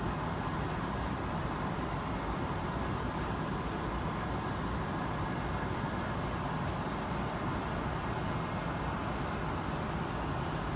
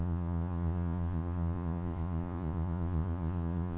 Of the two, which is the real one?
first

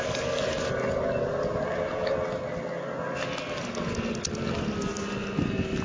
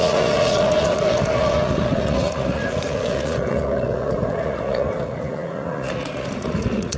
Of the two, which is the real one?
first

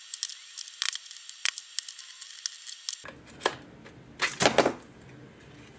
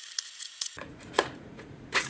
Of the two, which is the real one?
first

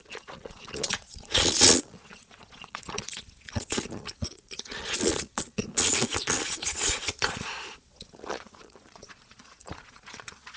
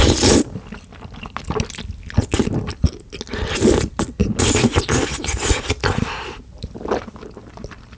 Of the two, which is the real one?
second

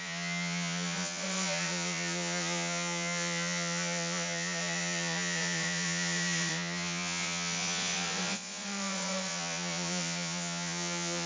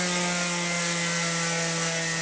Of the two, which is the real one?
second